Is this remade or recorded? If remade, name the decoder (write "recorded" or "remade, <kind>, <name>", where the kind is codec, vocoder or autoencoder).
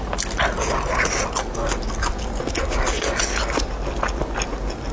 recorded